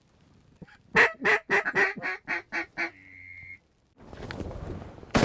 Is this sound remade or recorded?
recorded